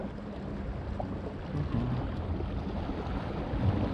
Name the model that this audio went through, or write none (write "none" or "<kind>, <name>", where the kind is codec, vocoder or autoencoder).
none